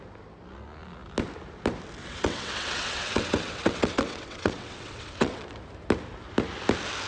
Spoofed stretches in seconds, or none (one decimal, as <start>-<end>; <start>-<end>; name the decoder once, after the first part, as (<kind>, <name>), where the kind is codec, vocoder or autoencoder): 2.0-5.4 (vocoder, WaveNeXt)